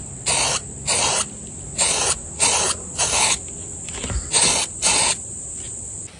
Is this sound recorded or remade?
recorded